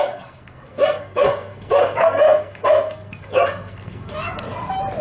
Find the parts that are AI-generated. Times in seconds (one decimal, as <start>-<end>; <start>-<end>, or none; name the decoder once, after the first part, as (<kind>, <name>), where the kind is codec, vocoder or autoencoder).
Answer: 0.0-4.3 (codec, SNAC)